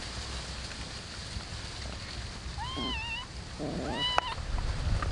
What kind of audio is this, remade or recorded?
recorded